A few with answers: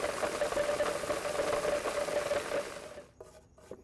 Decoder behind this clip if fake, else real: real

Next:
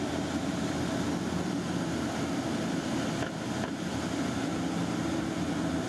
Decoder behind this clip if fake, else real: real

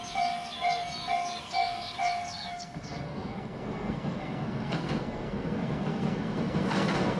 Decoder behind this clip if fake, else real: fake, codec, SNAC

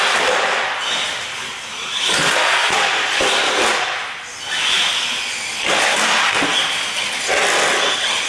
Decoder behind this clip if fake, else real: real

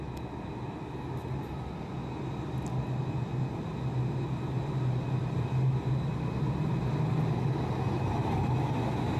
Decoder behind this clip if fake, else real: real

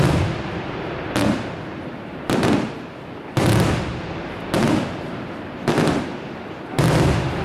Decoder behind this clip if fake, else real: real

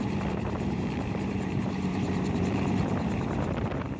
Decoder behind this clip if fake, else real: fake, vocoder, BigVGAN v2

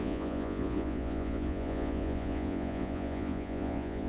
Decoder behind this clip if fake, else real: fake, vocoder, Vocos